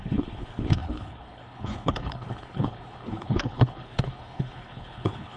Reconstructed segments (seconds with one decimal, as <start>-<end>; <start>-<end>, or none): 0.0-5.4